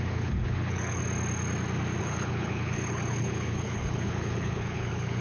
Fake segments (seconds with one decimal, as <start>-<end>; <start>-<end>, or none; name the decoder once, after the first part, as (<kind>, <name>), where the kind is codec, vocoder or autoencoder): 0.0-1.0 (codec, HILCodec); 2.0-5.2